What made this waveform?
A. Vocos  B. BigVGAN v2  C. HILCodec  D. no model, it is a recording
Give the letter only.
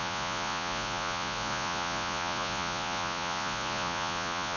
A